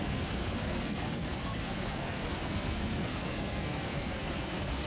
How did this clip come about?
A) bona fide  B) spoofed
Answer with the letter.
B